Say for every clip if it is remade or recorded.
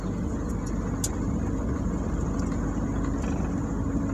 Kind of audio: recorded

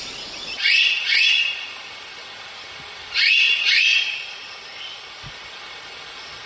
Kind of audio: recorded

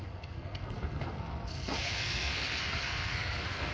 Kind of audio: remade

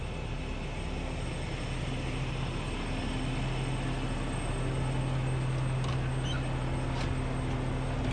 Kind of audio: recorded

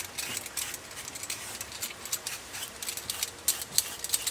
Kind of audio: recorded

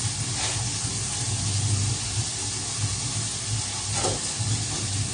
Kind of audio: recorded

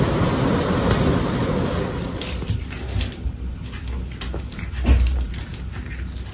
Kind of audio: recorded